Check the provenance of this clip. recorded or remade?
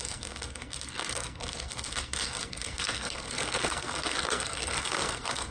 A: remade